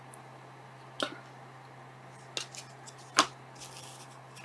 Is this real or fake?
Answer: real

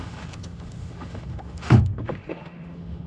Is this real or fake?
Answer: fake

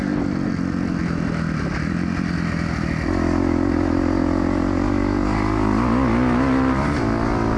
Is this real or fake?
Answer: real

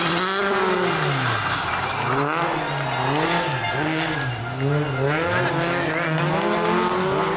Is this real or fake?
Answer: real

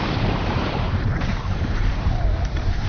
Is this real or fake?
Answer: fake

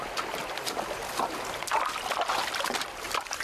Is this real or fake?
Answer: real